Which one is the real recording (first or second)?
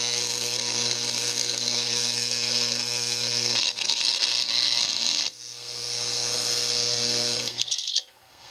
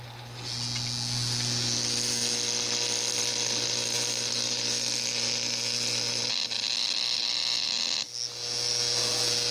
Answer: second